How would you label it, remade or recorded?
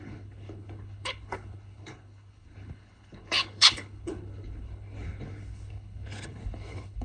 remade